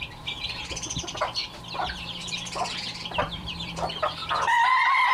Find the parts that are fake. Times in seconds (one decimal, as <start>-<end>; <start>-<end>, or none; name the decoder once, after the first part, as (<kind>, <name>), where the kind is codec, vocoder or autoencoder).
0.0-5.1 (vocoder, BigVGAN v2)